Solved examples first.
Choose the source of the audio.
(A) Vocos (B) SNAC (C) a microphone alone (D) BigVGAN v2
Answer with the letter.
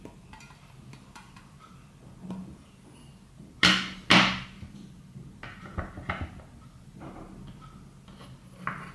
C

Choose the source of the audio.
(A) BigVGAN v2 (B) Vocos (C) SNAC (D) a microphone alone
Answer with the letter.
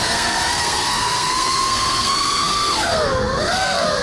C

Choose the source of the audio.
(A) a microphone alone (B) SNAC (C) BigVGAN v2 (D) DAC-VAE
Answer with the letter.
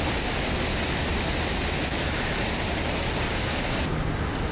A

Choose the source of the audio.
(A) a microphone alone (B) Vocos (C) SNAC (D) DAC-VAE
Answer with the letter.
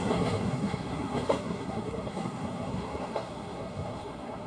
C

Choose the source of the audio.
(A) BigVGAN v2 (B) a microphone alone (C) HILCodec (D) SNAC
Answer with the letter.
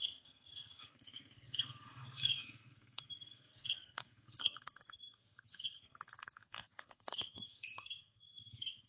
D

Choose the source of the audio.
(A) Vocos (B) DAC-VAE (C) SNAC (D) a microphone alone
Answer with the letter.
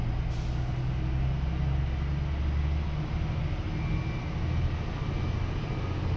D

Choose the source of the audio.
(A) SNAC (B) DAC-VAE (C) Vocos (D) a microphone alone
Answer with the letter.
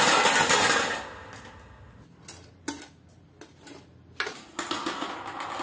D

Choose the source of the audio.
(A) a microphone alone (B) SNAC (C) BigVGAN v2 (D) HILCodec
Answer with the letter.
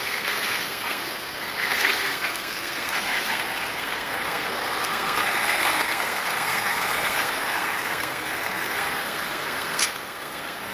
B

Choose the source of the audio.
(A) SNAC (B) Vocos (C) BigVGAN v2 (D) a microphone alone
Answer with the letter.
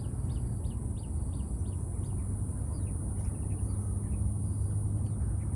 D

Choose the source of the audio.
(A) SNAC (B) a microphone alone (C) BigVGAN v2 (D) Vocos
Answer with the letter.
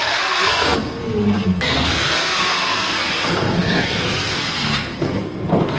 A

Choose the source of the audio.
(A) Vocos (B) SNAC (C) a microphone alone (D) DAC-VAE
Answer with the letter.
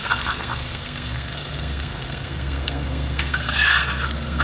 B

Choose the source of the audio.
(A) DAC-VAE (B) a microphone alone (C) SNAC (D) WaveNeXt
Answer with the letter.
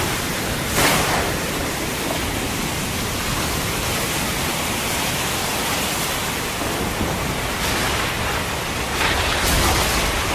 B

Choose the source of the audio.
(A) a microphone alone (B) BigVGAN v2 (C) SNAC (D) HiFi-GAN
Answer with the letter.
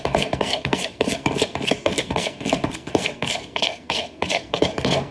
C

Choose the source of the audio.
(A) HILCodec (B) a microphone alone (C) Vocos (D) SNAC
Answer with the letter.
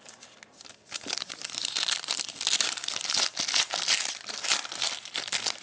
B